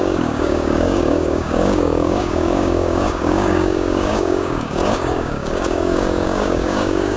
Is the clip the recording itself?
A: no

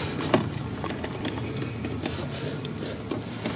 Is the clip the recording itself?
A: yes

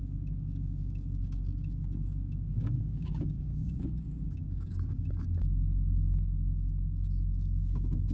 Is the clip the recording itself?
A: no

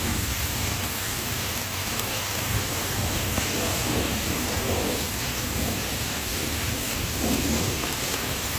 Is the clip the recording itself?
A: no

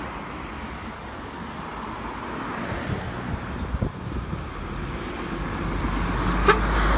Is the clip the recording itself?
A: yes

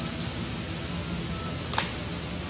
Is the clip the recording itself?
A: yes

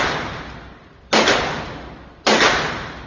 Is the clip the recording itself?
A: yes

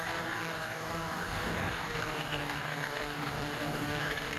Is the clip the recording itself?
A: no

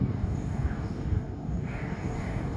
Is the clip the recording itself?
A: no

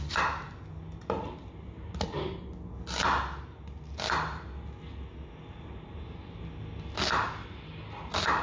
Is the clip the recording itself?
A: yes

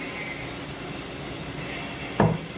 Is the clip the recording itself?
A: yes